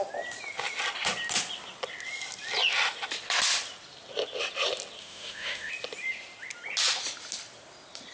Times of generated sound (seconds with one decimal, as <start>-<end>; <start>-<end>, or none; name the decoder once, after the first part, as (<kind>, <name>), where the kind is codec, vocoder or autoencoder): 5.0-5.7 (autoencoder, DAC-VAE)